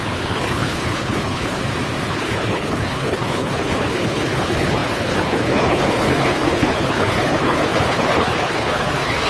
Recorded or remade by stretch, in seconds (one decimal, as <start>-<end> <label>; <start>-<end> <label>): 0.0-1.6 remade; 1.6-2.1 recorded; 2.1-9.3 remade